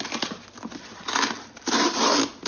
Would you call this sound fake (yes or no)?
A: no